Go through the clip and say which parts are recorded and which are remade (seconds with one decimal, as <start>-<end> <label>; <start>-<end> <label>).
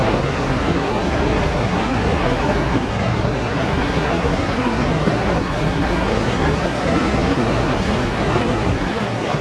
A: 0.0-9.4 remade